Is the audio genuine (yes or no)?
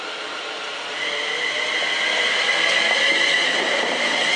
yes